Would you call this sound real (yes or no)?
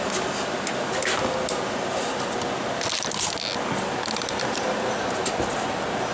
yes